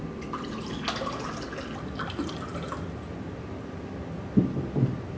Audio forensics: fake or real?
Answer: real